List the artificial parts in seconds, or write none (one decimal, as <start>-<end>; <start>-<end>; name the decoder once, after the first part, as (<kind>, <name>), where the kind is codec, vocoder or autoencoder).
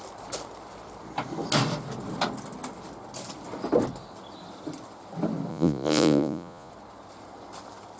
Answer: 5.5-6.7 (vocoder, Vocos)